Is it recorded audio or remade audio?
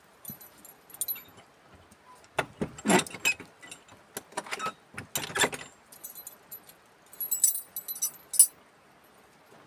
recorded